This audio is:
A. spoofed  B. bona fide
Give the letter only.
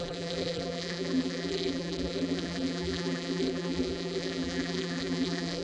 A